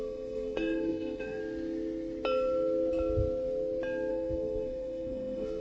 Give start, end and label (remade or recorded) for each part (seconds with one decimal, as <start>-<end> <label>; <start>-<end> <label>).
0.0-1.4 remade; 1.4-4.1 recorded; 4.1-5.6 remade